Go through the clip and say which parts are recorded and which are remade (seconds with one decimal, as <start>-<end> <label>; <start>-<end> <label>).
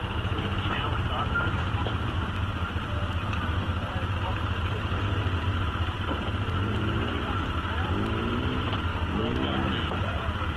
0.0-8.9 remade; 8.9-10.0 recorded; 10.0-10.6 remade